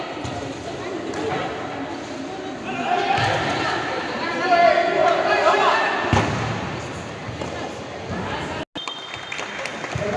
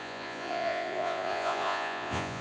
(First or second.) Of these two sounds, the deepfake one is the second